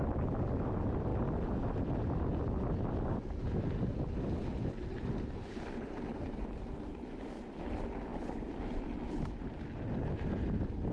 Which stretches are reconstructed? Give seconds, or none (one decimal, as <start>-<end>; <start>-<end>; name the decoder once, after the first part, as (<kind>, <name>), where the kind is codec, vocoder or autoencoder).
none